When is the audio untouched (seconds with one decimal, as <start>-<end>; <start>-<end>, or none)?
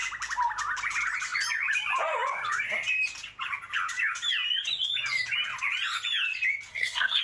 0.0-6.7